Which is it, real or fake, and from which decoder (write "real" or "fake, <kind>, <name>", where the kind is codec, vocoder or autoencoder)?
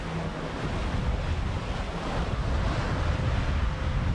real